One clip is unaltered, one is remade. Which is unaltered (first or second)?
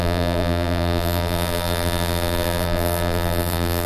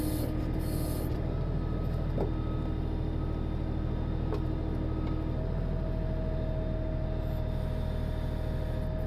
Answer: second